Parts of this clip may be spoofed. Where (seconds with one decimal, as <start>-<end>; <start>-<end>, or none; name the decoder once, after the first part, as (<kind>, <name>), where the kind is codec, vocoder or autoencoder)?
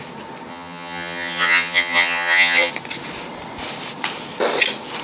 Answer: 0.5-2.7 (vocoder, HiFi-GAN)